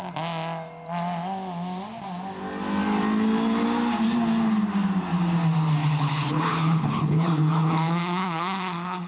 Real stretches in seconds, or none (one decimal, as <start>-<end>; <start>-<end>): 0.0-5.8